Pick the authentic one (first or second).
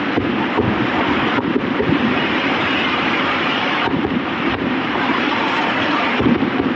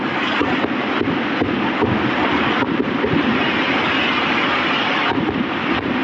second